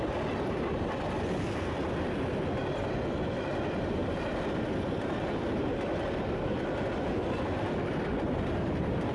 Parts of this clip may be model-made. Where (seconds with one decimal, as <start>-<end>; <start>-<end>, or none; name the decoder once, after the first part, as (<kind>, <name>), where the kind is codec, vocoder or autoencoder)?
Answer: none